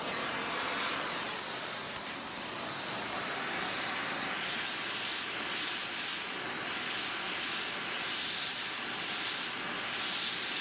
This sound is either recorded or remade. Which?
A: recorded